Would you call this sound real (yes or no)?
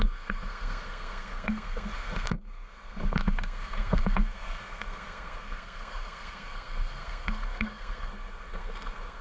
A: no